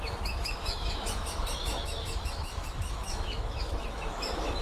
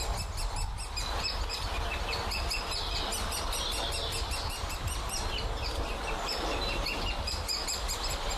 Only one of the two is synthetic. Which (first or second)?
first